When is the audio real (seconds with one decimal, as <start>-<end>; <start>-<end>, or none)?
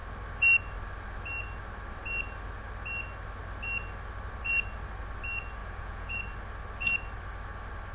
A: 0.0-5.6; 6.2-7.9